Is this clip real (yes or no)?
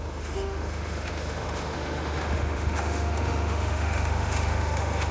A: no